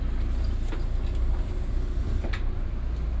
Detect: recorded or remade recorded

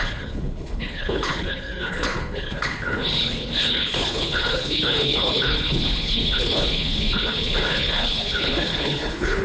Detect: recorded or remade remade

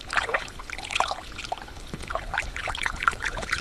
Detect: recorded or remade remade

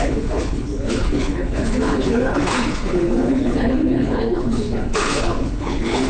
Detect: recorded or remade remade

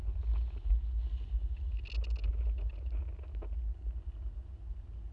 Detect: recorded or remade recorded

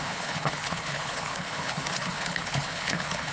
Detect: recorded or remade remade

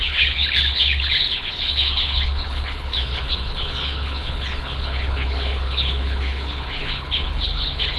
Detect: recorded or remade remade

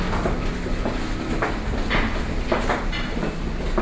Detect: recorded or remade recorded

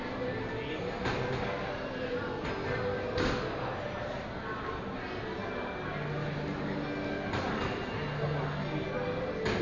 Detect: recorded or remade recorded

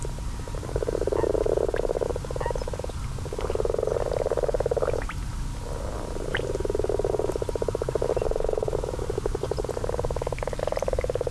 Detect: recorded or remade recorded